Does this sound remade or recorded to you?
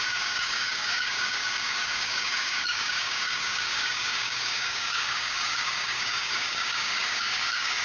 remade